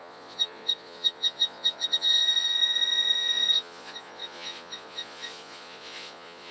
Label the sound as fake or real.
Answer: fake